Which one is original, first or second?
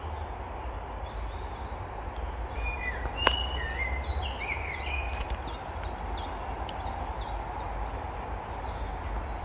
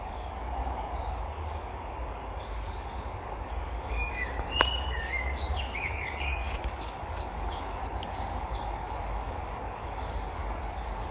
first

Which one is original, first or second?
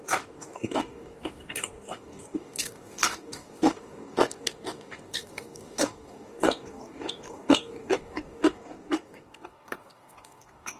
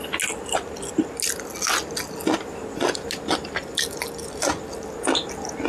second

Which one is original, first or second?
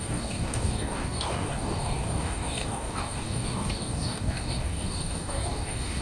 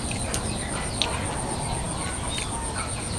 second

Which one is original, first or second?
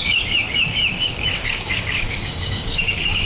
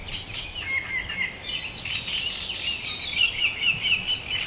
second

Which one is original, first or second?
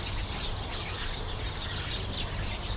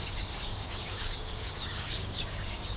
first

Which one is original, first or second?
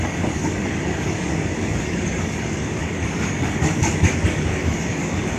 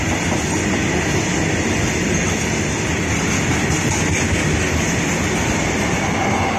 second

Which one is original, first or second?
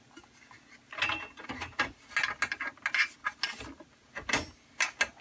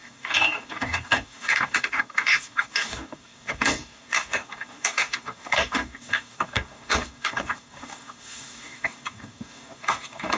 first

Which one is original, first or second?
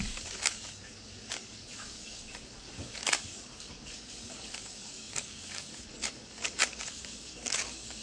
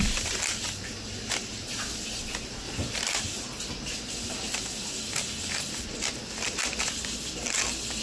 second